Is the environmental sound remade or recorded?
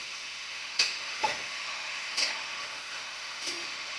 remade